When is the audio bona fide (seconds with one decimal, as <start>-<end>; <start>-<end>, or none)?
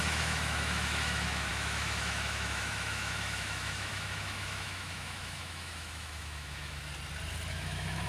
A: 6.9-7.5